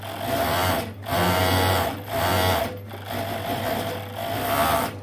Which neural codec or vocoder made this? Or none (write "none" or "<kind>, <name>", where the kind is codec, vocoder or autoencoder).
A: none